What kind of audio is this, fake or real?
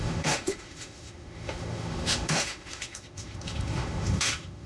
fake